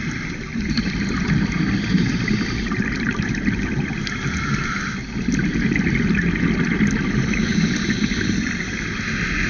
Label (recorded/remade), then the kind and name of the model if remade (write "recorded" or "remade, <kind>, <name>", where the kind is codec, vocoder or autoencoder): recorded